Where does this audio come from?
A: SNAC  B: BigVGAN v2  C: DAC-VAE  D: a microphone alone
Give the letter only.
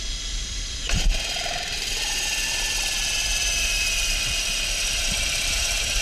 B